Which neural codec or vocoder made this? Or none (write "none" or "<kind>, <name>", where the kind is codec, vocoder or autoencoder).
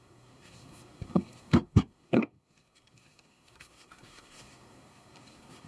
codec, SNAC